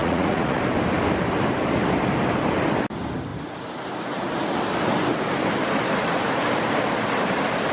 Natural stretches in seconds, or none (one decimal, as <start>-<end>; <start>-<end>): 0.6-7.7